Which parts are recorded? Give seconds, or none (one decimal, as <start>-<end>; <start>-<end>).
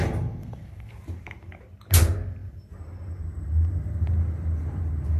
0.0-0.4; 0.9-5.2